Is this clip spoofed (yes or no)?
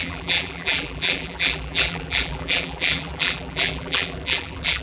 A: yes